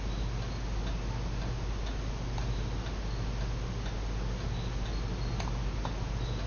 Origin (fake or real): real